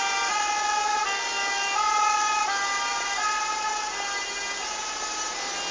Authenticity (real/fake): real